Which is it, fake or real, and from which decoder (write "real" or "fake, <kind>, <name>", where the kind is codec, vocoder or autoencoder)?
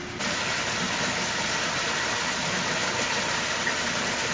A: real